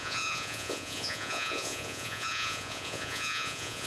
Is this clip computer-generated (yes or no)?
yes